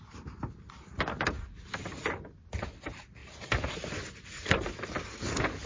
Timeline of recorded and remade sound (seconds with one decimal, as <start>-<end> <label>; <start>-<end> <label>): 0.0-5.7 recorded